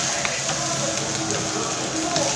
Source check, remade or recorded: recorded